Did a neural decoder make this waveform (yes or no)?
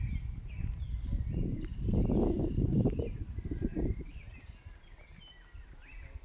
no